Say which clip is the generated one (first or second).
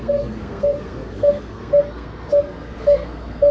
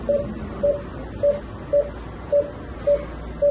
first